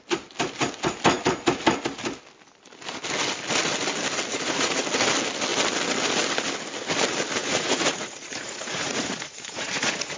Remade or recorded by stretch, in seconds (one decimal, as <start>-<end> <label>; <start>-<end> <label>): 0.0-4.3 recorded; 4.3-4.8 remade; 4.8-7.4 recorded; 7.4-10.2 remade